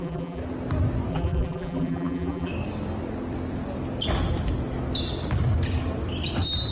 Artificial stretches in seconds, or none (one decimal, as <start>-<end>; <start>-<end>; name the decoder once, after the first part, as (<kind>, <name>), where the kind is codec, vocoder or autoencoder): 0.0-0.4 (vocoder, BigVGAN v2); 1.1-2.5